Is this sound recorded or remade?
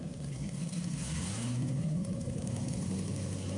remade